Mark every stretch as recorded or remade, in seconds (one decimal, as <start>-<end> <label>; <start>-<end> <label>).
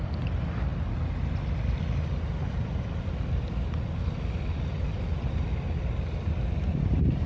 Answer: 0.0-7.3 recorded